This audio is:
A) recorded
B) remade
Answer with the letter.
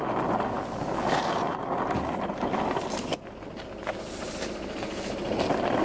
A